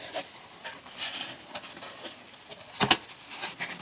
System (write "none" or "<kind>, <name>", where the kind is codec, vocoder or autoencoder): none